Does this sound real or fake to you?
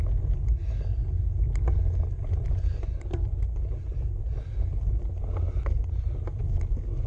real